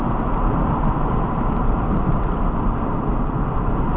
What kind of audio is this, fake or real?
real